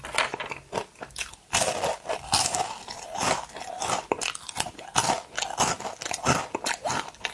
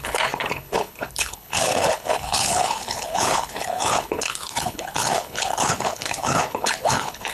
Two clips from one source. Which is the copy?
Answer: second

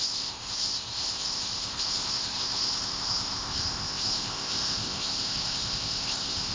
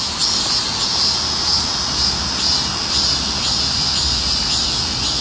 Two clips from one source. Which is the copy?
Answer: first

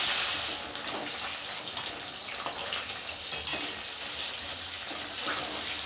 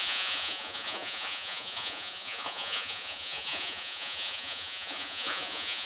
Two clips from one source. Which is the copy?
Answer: second